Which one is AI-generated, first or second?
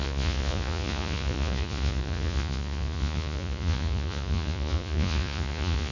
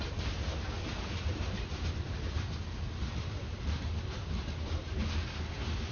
first